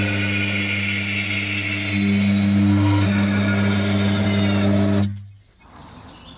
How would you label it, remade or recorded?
recorded